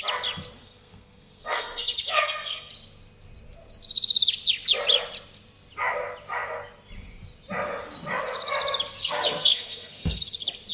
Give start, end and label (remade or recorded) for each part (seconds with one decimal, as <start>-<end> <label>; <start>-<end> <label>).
0.0-0.6 recorded; 0.6-2.7 remade; 2.7-9.0 recorded; 9.0-10.2 remade; 10.2-10.7 recorded